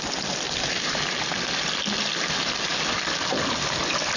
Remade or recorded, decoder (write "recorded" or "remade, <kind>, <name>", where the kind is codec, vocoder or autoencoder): recorded